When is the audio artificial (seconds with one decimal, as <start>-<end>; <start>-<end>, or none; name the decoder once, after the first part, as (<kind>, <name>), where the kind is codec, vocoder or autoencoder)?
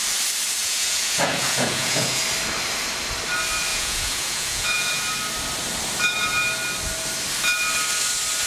0.6-2.2 (vocoder, Vocos); 3.7-5.0